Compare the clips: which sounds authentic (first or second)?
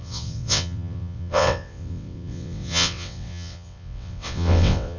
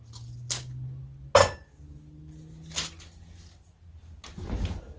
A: second